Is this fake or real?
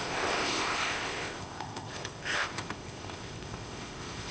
fake